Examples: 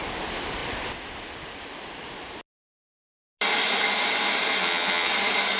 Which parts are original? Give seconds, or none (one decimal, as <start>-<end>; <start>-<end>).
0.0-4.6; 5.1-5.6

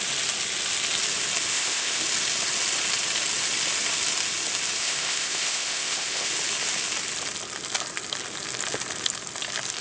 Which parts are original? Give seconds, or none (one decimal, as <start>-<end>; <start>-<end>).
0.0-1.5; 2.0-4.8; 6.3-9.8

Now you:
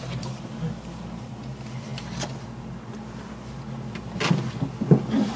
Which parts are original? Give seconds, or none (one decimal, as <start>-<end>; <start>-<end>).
0.0-5.4

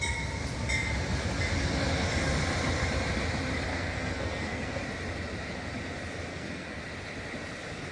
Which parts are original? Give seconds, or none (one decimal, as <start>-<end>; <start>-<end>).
0.0-3.7; 4.8-6.3; 6.8-7.9